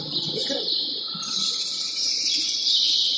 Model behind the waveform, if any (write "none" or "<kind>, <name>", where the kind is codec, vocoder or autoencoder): none